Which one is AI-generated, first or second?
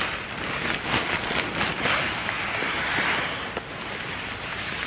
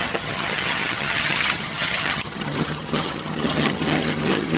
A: second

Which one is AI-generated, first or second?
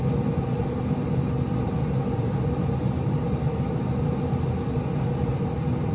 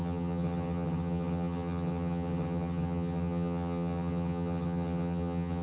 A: second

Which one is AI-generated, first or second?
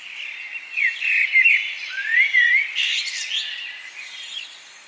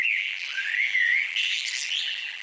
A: second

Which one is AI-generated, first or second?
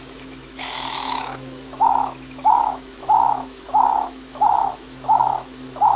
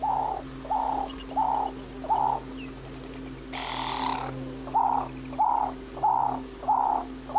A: first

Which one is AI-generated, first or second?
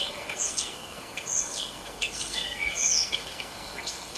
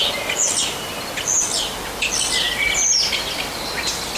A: first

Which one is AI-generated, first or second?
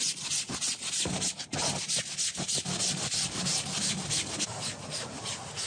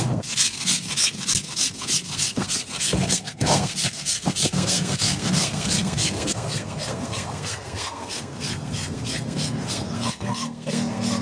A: second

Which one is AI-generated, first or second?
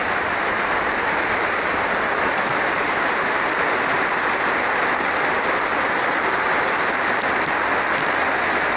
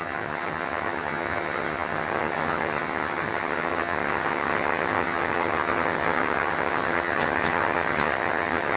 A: second